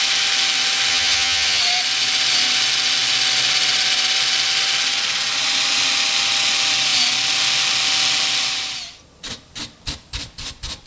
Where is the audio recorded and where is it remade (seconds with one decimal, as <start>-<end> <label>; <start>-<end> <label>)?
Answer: 0.0-0.9 recorded; 0.9-1.6 remade; 1.6-10.9 recorded